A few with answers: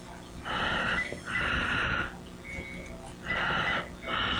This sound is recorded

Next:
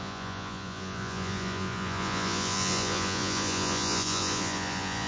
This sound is remade